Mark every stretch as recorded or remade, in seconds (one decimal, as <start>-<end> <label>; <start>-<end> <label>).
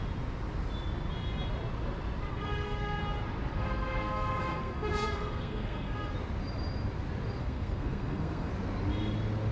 0.0-2.3 recorded; 2.3-3.0 remade; 3.0-3.5 recorded; 3.5-6.1 remade; 6.1-7.4 recorded; 7.4-8.5 remade; 8.5-9.5 recorded